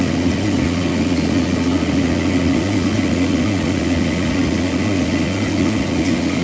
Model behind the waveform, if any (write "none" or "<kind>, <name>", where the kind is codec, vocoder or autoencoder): vocoder, Vocos